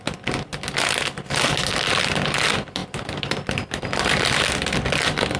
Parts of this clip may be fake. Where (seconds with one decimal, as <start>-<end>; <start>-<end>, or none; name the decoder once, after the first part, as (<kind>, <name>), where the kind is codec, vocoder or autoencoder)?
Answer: none

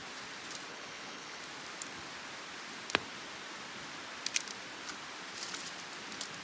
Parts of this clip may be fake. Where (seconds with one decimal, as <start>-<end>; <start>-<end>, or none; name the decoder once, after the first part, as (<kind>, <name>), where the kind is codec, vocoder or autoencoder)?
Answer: 0.7-1.4 (codec, HILCodec)

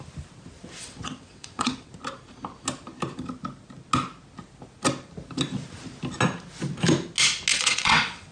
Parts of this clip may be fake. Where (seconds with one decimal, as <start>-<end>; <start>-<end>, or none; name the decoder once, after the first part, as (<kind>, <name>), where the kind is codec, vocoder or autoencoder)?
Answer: 0.8-1.9 (vocoder, WaveNeXt); 7.5-8.3